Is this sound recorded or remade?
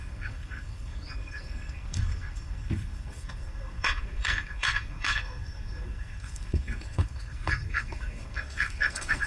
remade